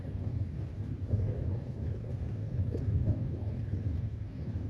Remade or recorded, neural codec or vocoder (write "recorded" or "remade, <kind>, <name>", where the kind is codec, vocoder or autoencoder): remade, codec, DAC